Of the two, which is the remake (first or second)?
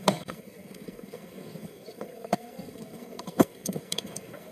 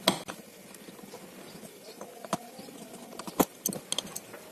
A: first